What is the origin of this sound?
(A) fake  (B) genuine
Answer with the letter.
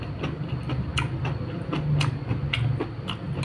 B